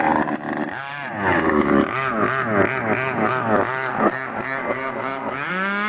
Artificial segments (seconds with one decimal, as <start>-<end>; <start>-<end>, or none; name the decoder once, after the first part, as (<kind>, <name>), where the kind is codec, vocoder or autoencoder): 3.9-5.5 (codec, SNAC)